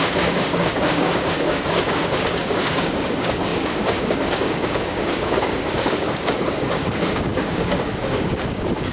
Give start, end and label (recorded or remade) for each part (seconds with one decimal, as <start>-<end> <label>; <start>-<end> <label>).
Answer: 0.0-8.9 remade